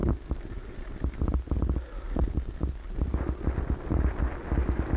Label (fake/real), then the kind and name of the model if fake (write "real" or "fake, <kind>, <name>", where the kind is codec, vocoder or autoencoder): real